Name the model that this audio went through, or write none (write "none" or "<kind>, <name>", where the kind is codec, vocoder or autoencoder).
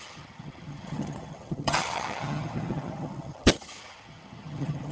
vocoder, HiFi-GAN